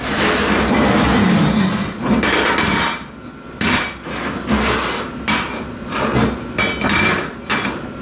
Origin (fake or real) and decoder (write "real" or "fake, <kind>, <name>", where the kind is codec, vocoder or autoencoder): real